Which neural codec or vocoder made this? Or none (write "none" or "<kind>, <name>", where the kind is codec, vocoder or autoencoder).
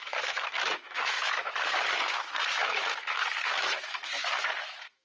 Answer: autoencoder, DAC-VAE